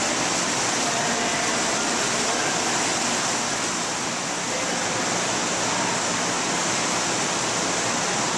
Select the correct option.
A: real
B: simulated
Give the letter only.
A